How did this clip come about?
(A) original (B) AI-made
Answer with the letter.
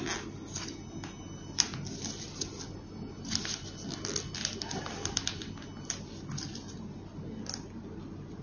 A